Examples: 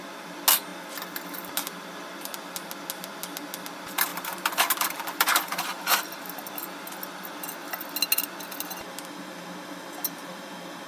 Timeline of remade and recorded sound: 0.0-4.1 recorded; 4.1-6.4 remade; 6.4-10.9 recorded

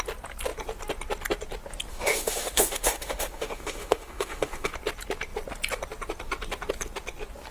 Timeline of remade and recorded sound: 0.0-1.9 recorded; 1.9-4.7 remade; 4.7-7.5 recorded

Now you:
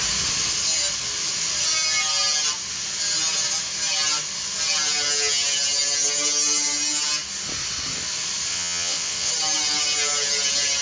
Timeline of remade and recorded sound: 0.0-8.5 recorded; 8.5-9.3 remade; 9.3-10.8 recorded

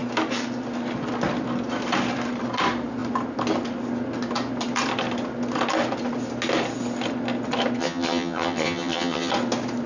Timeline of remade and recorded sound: 0.0-7.8 recorded; 7.8-9.3 remade; 9.3-9.9 recorded

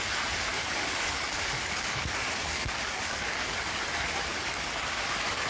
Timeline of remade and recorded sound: 0.0-0.5 recorded; 0.5-3.8 remade; 3.8-4.3 recorded; 4.3-5.5 remade

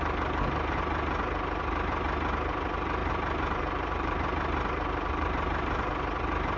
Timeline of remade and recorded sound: 0.0-3.0 recorded; 3.0-5.9 remade; 5.9-6.6 recorded

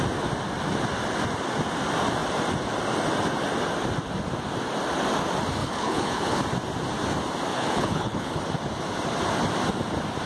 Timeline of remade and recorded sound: 0.0-5.6 recorded; 5.6-6.4 remade; 6.4-7.5 recorded; 7.5-8.4 remade; 8.4-10.3 recorded

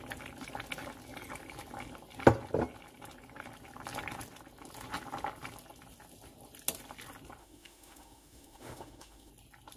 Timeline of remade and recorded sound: 0.0-7.4 recorded; 7.4-9.3 remade; 9.3-9.8 recorded